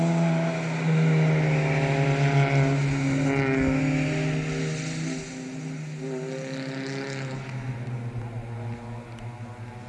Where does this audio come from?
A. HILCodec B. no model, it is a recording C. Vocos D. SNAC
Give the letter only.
B